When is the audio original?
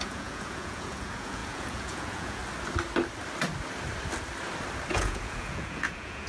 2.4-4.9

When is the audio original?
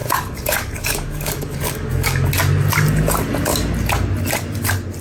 2.3-5.0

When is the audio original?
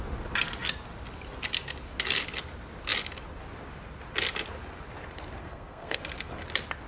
0.0-5.4; 6.0-6.9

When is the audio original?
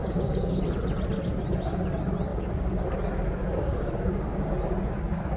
0.6-2.3; 4.5-5.4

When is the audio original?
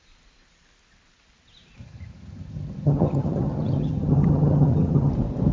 0.0-1.8; 5.1-5.5